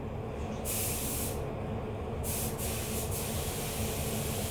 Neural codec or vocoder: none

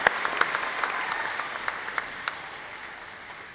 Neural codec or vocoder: none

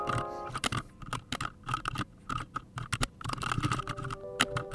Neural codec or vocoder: none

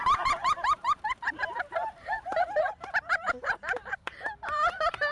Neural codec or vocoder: vocoder, BigVGAN v2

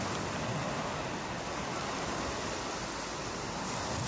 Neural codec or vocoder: none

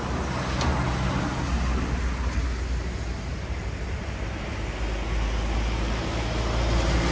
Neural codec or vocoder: none